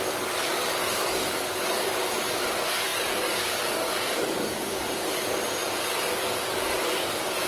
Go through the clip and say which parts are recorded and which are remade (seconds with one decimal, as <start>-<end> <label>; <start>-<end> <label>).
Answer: 0.0-7.5 remade